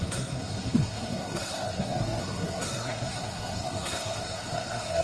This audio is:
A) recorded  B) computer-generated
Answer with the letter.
B